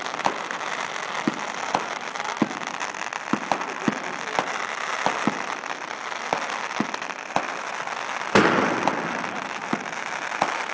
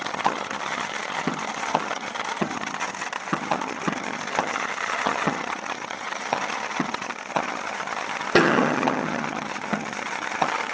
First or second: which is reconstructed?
second